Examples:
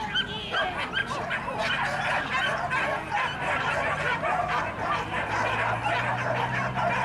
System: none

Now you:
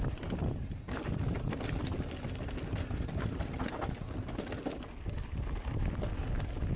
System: none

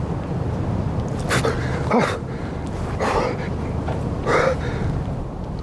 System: none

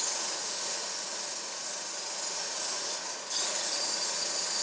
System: vocoder, Vocos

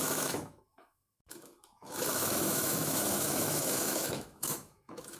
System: autoencoder, DAC-VAE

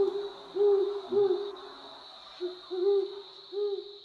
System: none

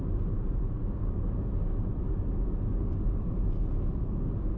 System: none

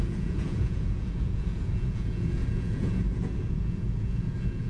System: vocoder, Vocos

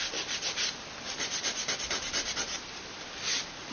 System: none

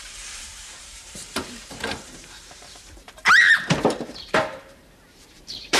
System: vocoder, BigVGAN v2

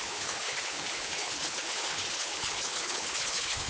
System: codec, HILCodec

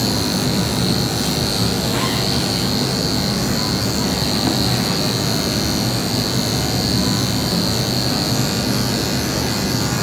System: none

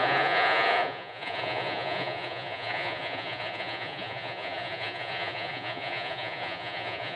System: vocoder, Vocos